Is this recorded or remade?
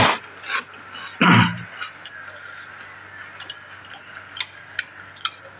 recorded